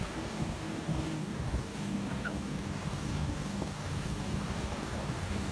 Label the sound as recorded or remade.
remade